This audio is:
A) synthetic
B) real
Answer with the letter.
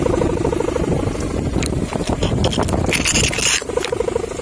B